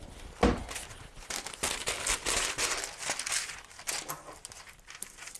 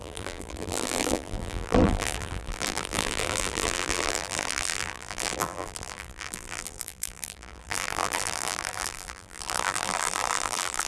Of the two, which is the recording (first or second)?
first